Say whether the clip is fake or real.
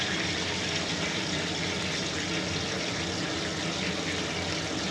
real